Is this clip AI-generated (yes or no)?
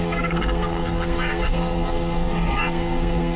yes